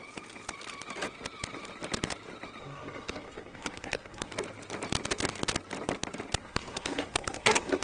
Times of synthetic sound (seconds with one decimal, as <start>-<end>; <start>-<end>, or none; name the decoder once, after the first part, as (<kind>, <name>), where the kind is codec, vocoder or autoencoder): 2.6-4.3 (codec, SNAC); 6.4-7.8